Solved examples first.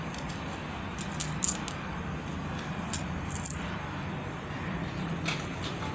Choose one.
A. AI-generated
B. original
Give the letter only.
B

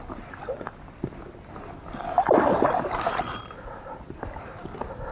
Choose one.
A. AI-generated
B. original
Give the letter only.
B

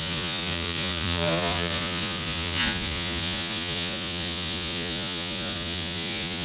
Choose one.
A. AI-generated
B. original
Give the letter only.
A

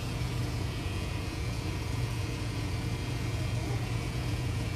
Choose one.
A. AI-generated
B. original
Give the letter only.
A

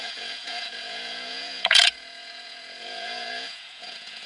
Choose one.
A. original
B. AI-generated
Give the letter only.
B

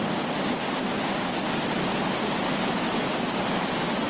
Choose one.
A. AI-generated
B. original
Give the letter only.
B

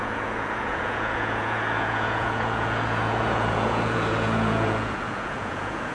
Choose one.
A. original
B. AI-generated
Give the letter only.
B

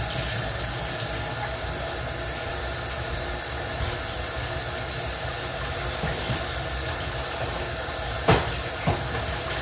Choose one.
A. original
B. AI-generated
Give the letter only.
A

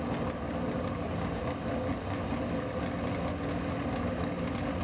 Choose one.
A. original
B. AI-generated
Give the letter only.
A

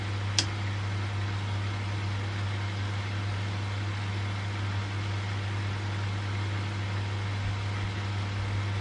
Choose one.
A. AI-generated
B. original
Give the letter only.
B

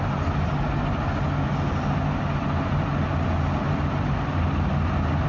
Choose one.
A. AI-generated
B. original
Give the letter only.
B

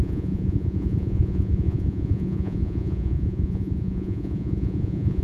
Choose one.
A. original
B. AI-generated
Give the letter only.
B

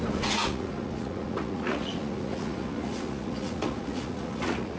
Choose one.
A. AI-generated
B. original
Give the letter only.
A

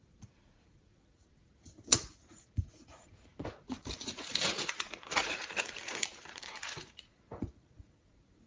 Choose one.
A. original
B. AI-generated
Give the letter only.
B